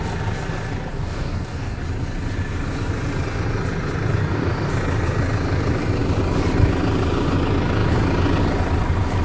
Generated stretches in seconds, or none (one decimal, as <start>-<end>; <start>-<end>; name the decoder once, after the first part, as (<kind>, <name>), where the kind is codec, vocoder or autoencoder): 0.9-1.8 (codec, DAC); 4.2-4.7